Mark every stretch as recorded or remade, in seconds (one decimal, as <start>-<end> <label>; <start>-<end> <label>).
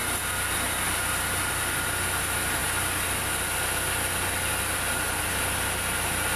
0.0-6.4 recorded